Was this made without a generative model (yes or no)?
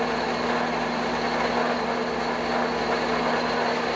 yes